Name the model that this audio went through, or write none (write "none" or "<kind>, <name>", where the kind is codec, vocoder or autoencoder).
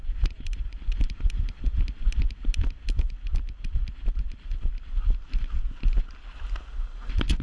none